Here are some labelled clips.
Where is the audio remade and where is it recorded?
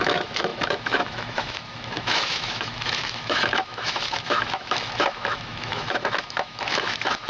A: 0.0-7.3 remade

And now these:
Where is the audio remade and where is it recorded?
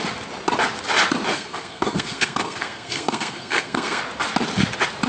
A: 0.0-1.3 recorded; 1.3-4.0 remade; 4.0-5.1 recorded